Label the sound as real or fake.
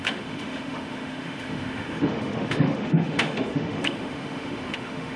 fake